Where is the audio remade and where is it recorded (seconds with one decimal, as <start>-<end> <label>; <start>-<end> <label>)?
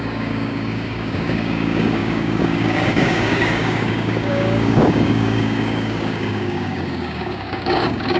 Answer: 0.0-8.2 remade